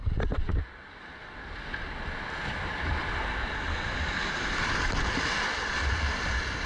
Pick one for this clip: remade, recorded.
recorded